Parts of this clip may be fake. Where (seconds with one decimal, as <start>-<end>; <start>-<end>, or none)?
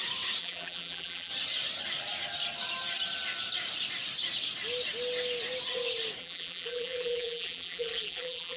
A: 0.4-1.3; 6.2-8.6